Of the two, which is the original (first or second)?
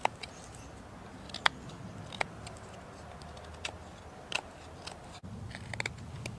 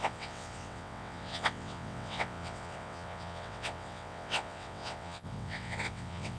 first